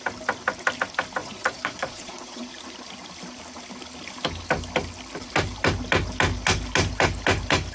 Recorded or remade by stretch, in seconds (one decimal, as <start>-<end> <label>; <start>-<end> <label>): 0.0-1.2 recorded; 1.2-2.4 remade; 2.4-7.7 recorded